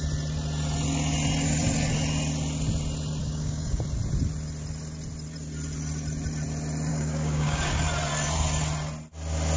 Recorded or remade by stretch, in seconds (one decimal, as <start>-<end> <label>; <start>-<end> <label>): 0.0-3.2 recorded; 3.2-3.8 remade; 3.8-6.9 recorded; 6.9-7.7 remade; 7.7-9.6 recorded

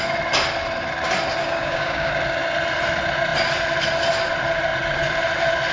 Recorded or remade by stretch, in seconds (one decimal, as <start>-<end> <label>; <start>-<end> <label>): 0.0-1.4 recorded; 1.4-2.1 remade; 2.1-5.7 recorded

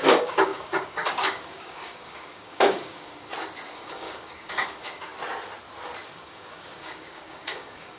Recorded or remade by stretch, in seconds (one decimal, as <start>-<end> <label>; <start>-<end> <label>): 0.0-3.3 remade; 3.3-3.9 recorded; 3.9-5.1 remade; 5.1-6.1 recorded; 6.1-8.0 remade

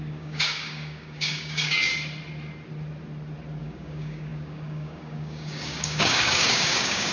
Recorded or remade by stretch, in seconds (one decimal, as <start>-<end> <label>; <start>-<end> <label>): 0.0-1.9 remade; 1.9-3.6 recorded; 3.6-7.1 remade

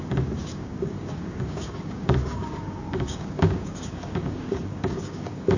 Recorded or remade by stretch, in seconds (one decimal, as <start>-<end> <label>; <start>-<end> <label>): 0.0-5.6 remade